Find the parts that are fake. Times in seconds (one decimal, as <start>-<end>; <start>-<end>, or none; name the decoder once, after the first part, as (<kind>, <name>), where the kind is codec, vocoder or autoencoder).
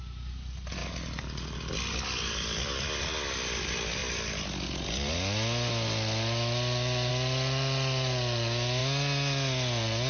none